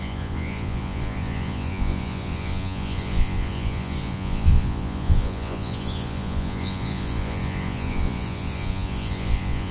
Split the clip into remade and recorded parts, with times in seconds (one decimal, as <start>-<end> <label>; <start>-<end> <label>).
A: 0.0-9.7 remade